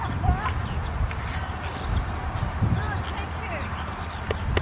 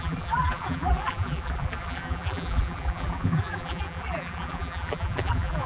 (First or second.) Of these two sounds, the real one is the first